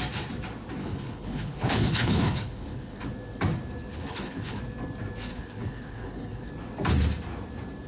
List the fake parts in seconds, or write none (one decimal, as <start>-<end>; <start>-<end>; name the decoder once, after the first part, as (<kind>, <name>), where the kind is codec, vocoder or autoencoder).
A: 0.8-3.0 (codec, HILCodec); 3.9-4.6; 5.3-6.5